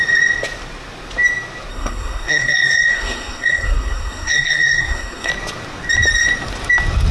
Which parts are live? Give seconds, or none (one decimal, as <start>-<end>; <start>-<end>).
0.0-1.7; 5.3-7.1